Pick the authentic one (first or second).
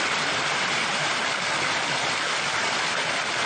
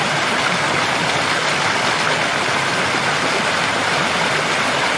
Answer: second